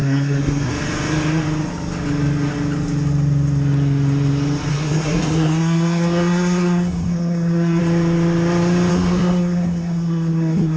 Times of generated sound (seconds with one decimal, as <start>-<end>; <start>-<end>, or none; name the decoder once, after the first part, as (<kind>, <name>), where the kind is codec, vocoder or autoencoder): 0.0-0.7 (codec, SNAC); 4.7-7.8; 8.9-10.8